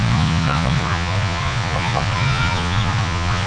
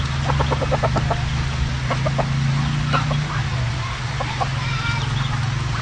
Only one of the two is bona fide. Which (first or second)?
second